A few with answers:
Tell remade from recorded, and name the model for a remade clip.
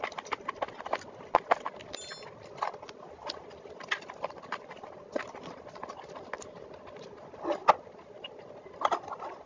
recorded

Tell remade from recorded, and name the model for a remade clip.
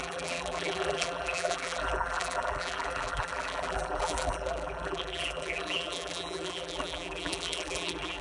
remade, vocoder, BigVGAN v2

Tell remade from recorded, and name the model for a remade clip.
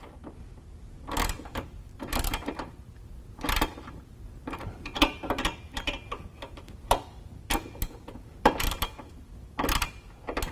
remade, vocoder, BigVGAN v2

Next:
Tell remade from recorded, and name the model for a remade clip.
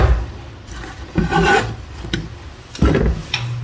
recorded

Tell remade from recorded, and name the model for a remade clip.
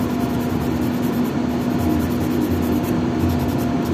recorded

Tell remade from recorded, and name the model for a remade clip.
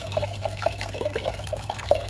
remade, codec, SNAC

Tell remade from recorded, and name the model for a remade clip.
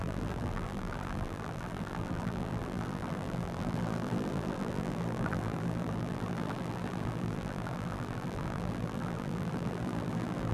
remade, vocoder, BigVGAN v2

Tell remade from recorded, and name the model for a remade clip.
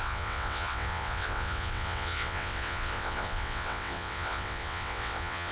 remade, vocoder, WaveNeXt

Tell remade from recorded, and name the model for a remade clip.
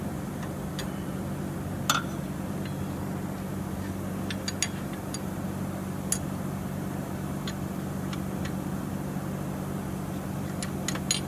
recorded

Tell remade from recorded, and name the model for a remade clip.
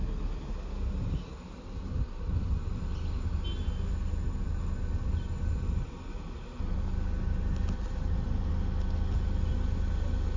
recorded